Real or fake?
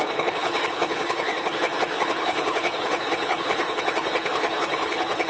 fake